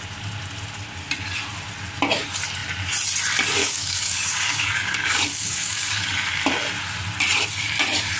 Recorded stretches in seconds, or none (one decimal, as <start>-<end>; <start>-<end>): 0.0-3.6; 6.1-8.2